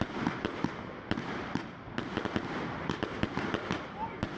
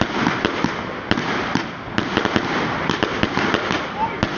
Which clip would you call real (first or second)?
second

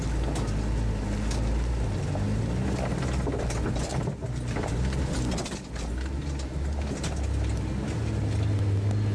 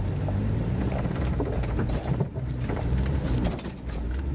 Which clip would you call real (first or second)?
first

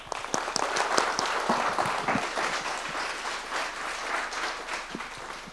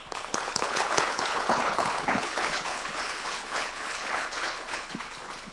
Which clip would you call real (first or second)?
first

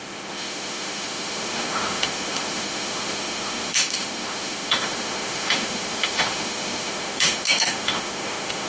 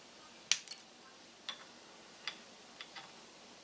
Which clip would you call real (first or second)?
second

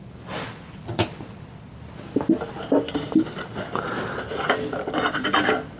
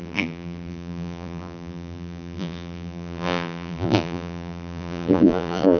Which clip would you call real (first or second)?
first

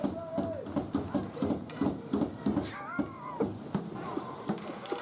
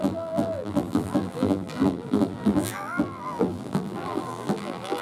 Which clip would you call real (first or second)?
first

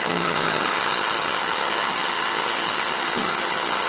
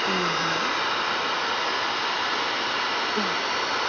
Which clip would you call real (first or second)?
second